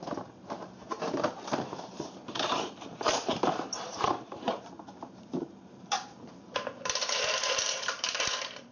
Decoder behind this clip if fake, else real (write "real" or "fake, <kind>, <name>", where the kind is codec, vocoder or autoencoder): fake, vocoder, BigVGAN v2